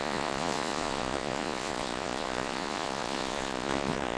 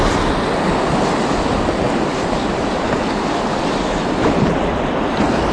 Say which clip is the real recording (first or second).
second